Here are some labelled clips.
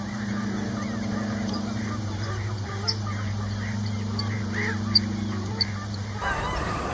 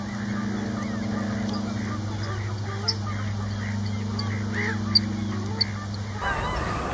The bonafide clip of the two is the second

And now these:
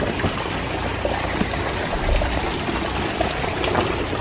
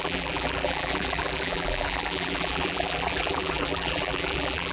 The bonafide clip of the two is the first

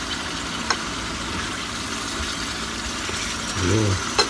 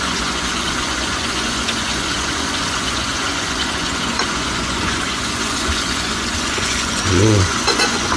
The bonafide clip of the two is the first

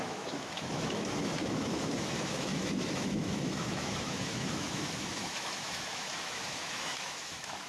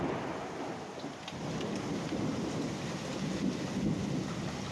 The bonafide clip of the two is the second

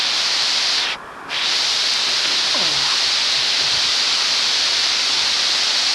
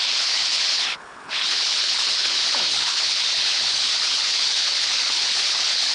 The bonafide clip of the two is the first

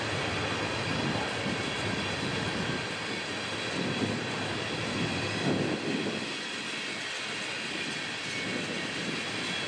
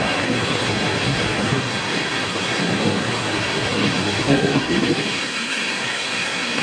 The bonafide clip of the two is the first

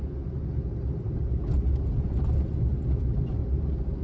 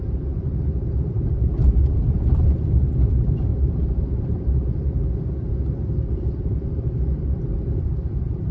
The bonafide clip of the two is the first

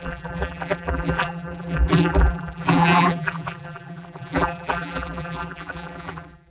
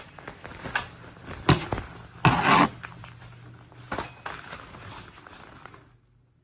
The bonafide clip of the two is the second